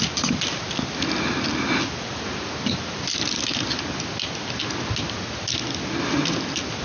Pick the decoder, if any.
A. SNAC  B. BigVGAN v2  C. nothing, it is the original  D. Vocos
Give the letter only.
C